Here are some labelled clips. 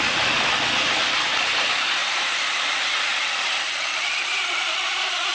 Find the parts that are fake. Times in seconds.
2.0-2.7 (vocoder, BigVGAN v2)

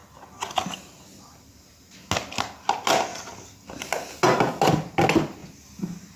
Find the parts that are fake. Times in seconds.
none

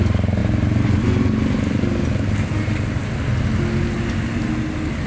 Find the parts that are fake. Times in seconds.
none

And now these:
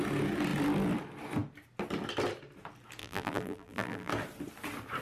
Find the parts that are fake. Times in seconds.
3.0-4.1 (vocoder, BigVGAN v2)

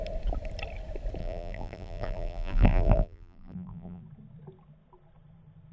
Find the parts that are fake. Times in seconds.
1.2-4.0 (vocoder, BigVGAN v2)